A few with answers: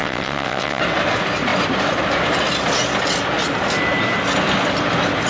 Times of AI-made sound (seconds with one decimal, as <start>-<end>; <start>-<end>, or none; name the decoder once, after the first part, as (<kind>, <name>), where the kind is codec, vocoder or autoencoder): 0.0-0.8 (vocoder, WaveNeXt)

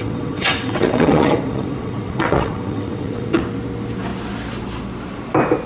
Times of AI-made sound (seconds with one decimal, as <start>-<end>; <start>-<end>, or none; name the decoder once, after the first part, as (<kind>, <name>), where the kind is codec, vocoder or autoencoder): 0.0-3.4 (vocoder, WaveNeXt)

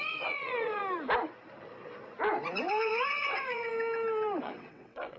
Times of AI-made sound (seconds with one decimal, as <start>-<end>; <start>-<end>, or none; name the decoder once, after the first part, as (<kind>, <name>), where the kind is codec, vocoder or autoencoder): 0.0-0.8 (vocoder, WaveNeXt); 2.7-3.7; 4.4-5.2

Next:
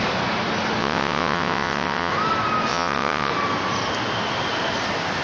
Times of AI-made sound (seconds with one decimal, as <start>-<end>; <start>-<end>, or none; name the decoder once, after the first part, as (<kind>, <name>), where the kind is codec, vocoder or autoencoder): 0.8-2.1 (vocoder, WaveNeXt); 2.7-3.3

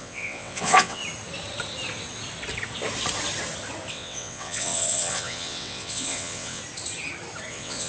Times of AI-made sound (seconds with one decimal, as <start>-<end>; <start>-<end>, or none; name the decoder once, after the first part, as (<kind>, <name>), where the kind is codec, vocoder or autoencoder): 0.0-1.0 (vocoder, WaveNeXt); 3.9-6.6; 7.5-7.9

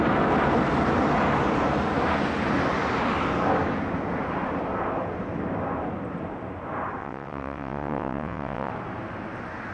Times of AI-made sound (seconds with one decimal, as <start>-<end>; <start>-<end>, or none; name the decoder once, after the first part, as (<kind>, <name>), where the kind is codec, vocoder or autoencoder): 7.0-8.7 (vocoder, WaveNeXt)

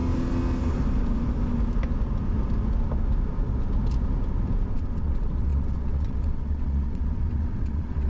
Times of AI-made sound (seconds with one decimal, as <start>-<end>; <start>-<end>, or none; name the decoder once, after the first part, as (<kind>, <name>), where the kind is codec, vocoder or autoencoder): 4.7-8.1 (vocoder, WaveNeXt)